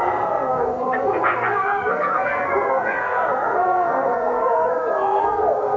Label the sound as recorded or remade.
remade